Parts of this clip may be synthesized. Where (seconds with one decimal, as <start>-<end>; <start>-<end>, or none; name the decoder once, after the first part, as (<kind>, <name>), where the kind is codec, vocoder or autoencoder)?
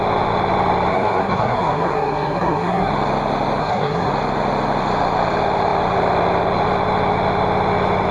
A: 0.9-2.9 (codec, SNAC); 3.6-4.1